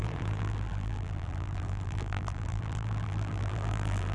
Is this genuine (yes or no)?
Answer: no